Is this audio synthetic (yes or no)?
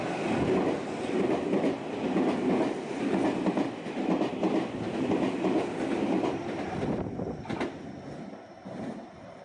no